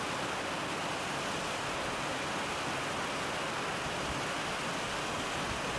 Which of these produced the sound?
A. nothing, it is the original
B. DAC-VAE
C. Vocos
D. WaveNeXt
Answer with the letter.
A